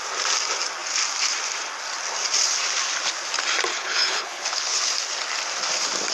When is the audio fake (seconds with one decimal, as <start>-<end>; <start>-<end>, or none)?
3.7-4.9